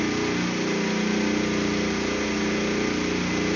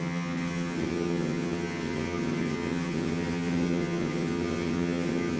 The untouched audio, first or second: first